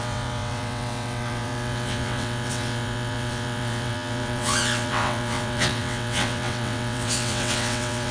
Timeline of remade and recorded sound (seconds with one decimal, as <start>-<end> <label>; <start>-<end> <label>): 0.0-8.1 remade